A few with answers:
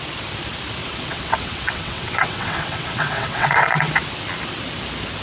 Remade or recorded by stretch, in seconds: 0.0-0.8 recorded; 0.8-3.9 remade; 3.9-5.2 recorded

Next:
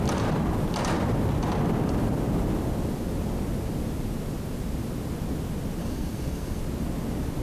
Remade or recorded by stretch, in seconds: 0.0-5.8 recorded; 5.8-6.6 remade; 6.6-7.4 recorded

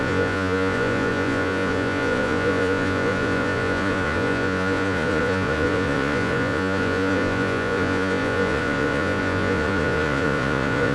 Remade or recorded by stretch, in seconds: 0.0-10.9 remade